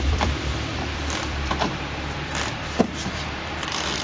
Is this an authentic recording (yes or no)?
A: no